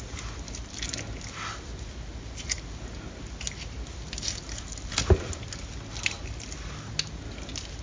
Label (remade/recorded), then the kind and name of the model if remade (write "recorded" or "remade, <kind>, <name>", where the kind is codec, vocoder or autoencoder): recorded